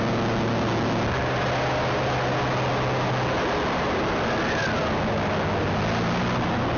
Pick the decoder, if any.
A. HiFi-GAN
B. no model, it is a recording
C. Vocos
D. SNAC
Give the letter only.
B